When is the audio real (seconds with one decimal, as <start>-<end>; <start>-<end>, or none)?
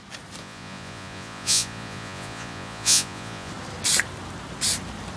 0.0-0.4; 3.5-5.2